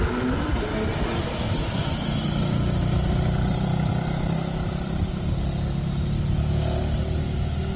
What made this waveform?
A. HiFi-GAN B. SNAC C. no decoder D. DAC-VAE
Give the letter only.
C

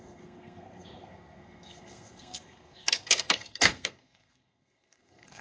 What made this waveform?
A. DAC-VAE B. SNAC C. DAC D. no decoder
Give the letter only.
B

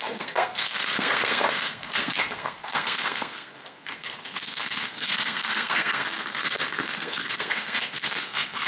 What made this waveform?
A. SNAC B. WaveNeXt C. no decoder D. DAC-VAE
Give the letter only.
A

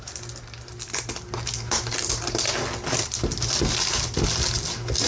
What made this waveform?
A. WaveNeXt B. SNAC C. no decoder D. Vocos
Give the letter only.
C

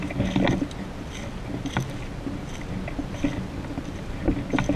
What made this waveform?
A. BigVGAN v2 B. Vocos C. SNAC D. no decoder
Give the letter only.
D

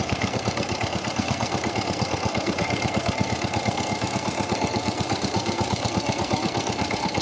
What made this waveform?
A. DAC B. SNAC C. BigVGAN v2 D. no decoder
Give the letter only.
B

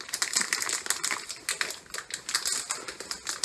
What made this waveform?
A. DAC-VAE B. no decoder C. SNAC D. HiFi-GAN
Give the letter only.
B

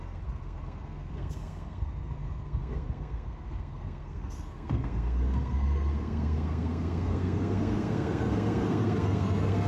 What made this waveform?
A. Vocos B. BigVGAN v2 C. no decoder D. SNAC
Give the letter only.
D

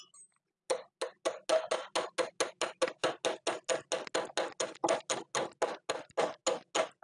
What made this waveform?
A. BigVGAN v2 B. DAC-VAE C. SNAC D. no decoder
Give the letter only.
D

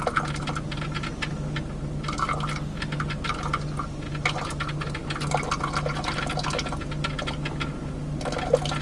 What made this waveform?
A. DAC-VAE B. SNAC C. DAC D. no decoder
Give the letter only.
D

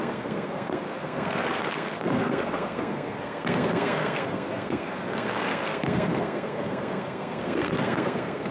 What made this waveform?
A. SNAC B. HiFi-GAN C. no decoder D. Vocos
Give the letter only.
A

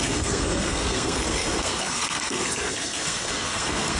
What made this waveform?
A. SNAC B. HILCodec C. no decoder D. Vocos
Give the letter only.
A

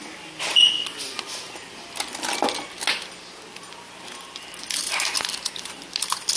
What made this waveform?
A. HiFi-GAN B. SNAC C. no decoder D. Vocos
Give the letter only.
C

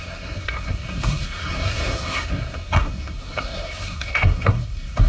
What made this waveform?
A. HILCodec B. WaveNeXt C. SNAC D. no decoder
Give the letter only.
C